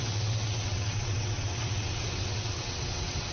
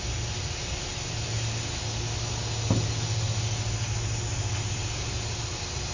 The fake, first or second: first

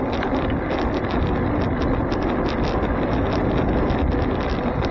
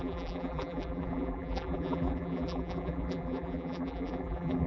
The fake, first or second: second